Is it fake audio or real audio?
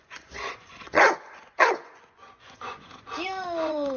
fake